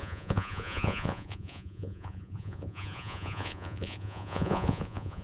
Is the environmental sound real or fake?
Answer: fake